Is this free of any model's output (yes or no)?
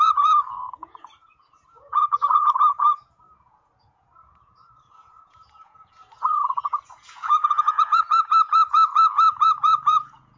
no